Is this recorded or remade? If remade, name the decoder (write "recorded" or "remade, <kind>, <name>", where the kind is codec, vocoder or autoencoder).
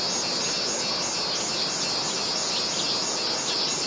recorded